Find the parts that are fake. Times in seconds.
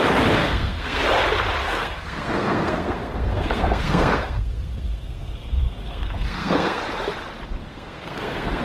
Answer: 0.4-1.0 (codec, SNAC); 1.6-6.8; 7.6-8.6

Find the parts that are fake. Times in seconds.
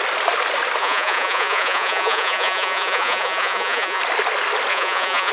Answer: 0.8-4.0 (vocoder, Vocos); 4.7-5.3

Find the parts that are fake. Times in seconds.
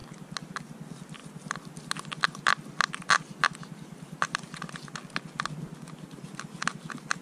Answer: none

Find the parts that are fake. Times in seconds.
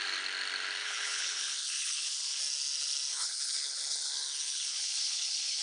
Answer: 0.8-2.4 (codec, HILCodec); 3.1-5.6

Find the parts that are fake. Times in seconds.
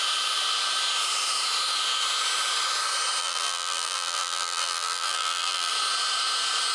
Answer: 3.2-5.7 (vocoder, BigVGAN v2)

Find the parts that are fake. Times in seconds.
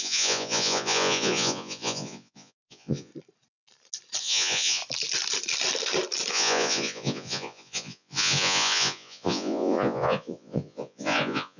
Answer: 0.0-3.1 (vocoder, Vocos); 4.2-4.8; 6.3-11.6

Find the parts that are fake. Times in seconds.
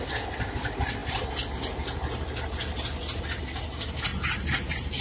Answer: none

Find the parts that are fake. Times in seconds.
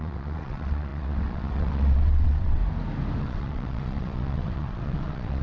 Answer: 0.0-2.6 (vocoder, WaveNeXt); 3.2-5.4